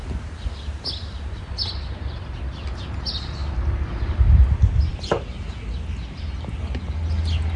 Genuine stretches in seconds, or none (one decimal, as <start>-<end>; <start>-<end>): 0.0-7.6